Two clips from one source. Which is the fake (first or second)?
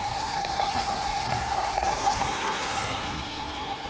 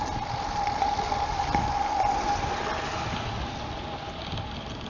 first